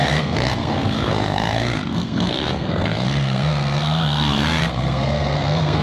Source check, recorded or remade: remade